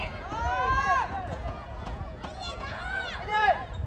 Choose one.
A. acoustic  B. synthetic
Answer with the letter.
B